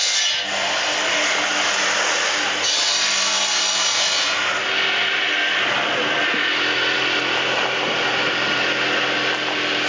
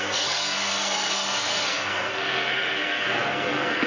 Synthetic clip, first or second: second